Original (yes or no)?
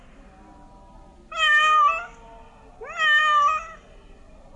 yes